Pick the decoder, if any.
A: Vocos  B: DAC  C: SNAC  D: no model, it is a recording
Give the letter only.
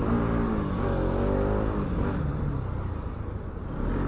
D